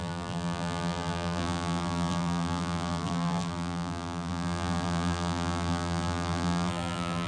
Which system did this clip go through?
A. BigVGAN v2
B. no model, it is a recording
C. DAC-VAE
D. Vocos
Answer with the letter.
A